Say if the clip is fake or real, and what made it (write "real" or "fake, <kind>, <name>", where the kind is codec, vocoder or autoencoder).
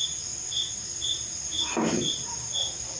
real